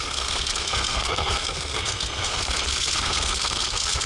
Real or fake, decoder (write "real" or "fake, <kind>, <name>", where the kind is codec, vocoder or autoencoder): fake, codec, SNAC